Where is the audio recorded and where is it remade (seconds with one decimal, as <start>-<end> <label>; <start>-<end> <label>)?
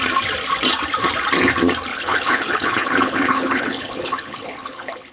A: 0.0-1.9 recorded; 1.9-5.1 remade